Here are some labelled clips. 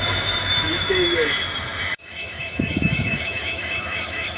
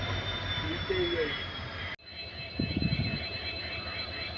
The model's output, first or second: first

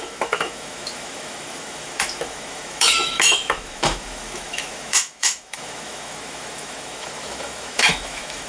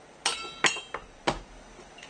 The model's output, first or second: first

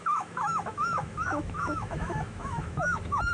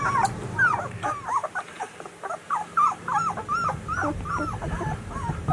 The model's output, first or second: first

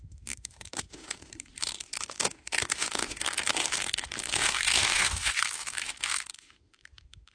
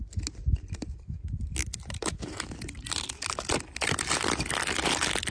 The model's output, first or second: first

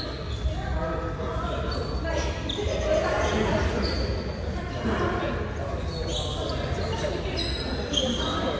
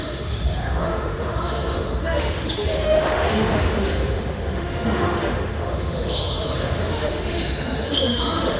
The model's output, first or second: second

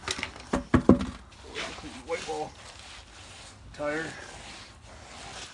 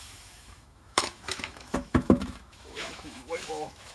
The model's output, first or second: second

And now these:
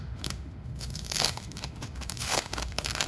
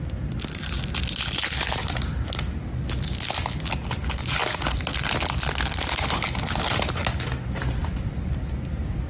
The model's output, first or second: first